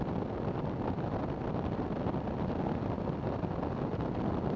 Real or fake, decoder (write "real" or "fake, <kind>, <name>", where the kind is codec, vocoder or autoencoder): real